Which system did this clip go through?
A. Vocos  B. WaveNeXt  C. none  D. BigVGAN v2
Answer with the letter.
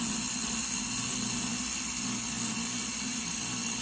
C